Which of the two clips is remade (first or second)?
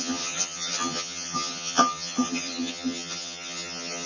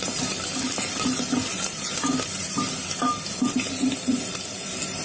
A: first